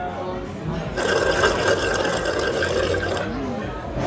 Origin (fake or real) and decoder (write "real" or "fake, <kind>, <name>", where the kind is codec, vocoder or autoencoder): real